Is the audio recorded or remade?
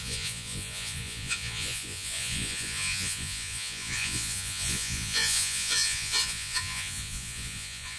remade